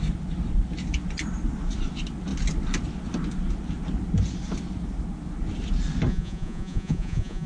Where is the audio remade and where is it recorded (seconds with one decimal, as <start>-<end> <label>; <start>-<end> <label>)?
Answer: 0.0-6.1 recorded; 6.1-7.5 remade